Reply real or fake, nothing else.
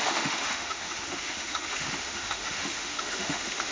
fake